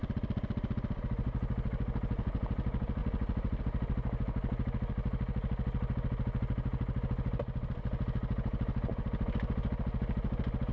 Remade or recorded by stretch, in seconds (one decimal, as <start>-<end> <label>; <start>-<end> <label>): 0.0-10.7 recorded